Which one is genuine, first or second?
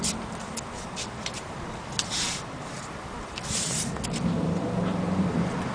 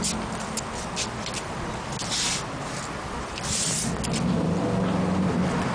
second